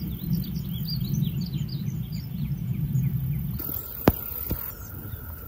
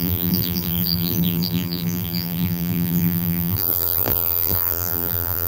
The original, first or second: first